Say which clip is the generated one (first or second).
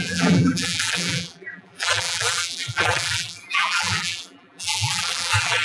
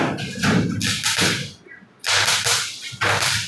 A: first